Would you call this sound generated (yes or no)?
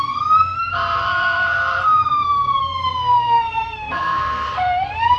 yes